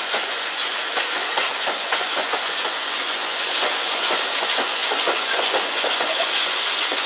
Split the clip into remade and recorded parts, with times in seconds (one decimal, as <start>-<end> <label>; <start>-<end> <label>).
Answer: 0.0-7.1 remade